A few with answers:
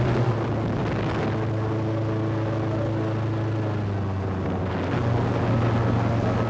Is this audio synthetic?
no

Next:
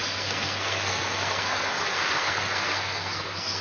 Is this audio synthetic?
yes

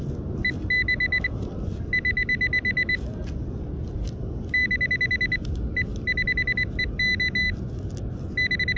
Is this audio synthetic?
no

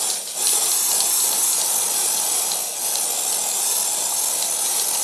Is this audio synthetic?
no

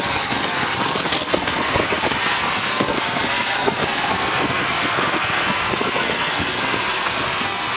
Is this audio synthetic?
yes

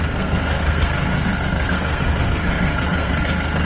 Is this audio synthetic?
yes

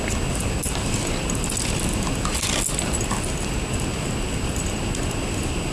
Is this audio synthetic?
no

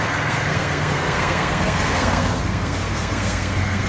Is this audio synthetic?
yes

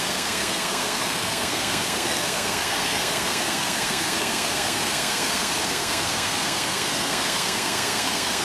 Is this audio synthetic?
yes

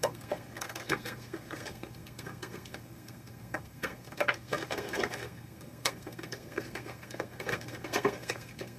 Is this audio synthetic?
yes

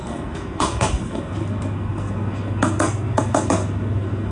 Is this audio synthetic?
yes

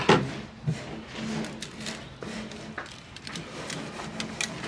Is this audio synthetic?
no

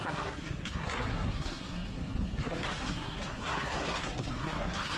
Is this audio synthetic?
yes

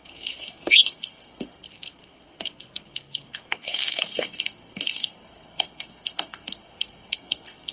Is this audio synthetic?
yes